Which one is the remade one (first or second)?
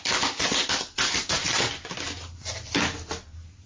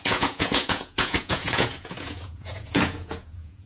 second